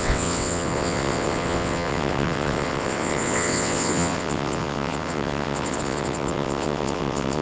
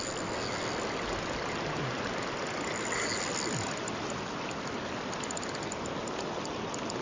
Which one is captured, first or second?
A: second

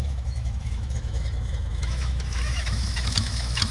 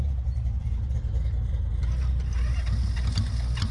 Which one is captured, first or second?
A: second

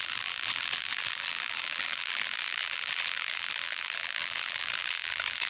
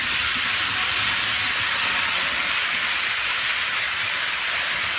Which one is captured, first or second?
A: second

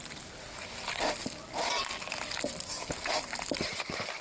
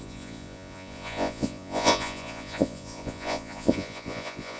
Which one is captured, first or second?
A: first